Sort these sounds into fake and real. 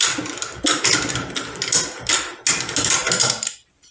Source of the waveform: real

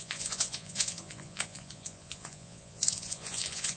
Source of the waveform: fake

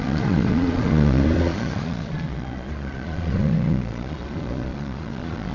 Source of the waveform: fake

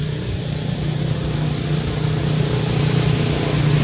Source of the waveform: real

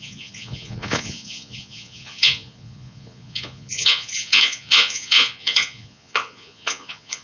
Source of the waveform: fake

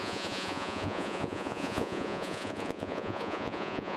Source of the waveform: fake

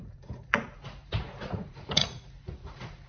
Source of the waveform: fake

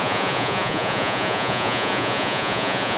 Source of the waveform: fake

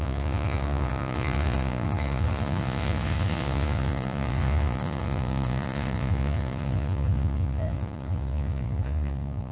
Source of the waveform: fake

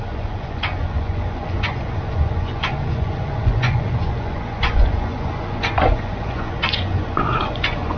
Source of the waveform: fake